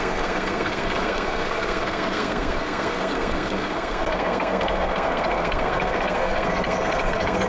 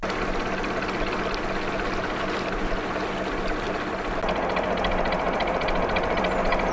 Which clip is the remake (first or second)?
first